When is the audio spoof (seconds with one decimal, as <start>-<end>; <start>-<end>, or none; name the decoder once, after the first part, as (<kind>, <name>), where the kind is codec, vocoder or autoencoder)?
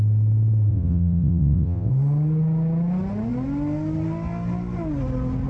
0.7-1.9 (vocoder, WaveNeXt)